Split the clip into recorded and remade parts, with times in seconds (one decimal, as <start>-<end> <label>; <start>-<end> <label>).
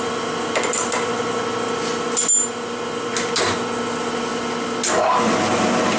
0.0-6.0 recorded